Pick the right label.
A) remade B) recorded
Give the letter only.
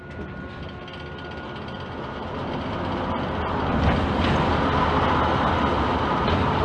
B